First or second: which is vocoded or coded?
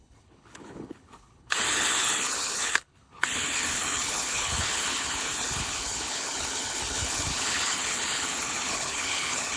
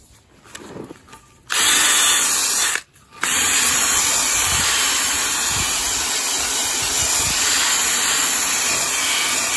first